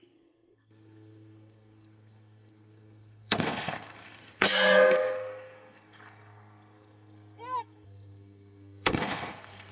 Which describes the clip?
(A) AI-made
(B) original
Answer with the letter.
A